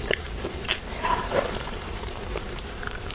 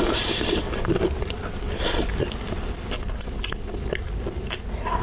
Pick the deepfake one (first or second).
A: first